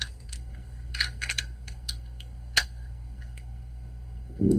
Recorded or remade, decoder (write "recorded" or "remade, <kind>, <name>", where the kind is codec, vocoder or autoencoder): remade, codec, SNAC